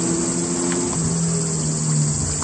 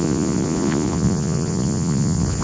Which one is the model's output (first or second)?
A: second